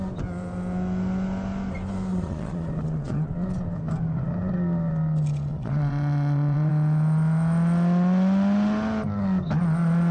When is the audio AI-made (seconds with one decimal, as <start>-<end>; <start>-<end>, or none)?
2.1-3.3; 5.5-6.7